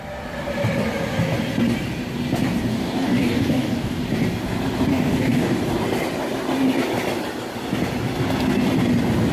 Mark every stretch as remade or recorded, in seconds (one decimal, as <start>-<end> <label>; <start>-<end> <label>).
0.0-2.7 recorded; 2.7-4.0 remade; 4.0-4.9 recorded; 4.9-5.6 remade; 5.6-9.3 recorded